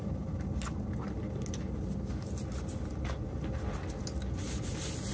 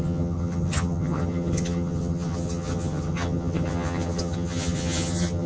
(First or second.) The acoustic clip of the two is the first